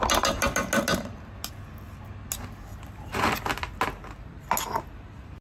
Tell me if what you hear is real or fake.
real